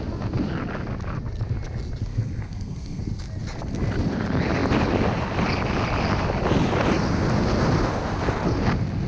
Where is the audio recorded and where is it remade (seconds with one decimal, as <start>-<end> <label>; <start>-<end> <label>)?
0.0-2.1 recorded; 2.1-3.0 remade; 3.0-9.1 recorded